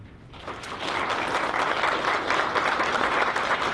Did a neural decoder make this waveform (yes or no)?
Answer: no